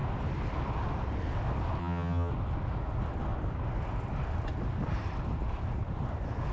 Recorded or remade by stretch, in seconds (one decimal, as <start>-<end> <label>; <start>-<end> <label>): 0.0-1.8 recorded; 1.8-2.3 remade; 2.3-6.5 recorded